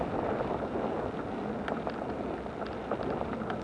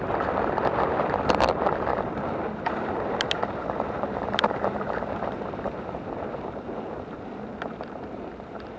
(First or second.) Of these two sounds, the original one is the first